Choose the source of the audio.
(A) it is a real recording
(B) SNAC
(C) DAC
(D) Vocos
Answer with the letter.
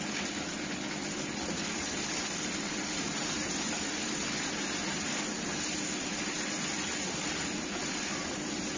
A